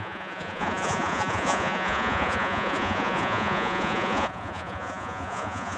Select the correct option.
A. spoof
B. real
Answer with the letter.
A